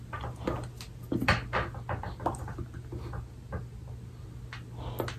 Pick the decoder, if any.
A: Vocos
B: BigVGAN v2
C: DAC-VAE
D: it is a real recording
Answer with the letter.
D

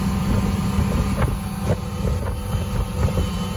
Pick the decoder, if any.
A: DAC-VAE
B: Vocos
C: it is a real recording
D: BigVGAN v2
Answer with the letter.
C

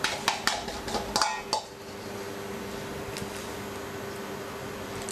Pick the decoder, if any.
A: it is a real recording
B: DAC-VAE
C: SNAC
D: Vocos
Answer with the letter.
A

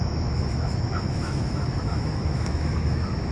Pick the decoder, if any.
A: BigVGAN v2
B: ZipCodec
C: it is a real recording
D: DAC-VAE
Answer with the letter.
D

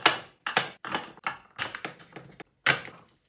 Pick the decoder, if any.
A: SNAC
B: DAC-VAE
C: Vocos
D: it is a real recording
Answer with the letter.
D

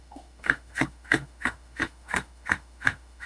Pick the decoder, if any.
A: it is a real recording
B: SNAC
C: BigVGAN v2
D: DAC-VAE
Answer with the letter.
D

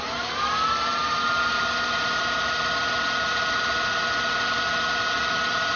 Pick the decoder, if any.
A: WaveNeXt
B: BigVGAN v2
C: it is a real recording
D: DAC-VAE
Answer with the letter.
C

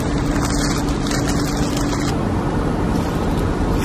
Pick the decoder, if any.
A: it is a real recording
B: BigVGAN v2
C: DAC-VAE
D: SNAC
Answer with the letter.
A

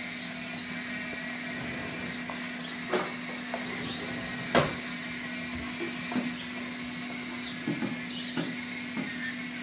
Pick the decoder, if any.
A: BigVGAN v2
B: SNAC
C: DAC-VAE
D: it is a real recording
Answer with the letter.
D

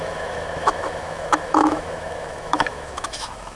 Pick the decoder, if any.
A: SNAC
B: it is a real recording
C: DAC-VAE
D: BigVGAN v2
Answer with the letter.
C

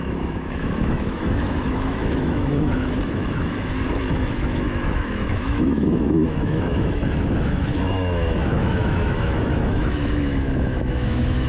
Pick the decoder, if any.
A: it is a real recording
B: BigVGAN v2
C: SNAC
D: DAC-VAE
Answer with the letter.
D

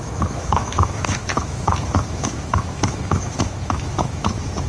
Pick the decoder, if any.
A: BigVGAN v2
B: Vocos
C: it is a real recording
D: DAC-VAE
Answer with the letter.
D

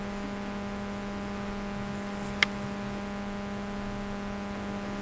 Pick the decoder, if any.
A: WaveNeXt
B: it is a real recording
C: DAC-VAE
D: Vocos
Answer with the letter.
B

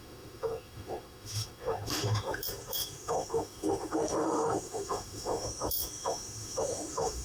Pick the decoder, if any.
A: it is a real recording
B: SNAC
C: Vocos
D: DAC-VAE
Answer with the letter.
D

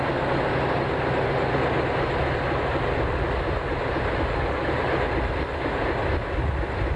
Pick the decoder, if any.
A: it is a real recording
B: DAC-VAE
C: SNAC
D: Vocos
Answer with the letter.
A